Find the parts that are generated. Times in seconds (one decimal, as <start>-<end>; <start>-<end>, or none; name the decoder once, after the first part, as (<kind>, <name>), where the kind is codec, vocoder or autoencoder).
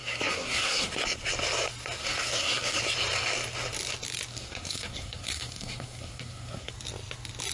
0.0-0.9 (codec, SNAC); 2.0-2.8; 4.3-6.7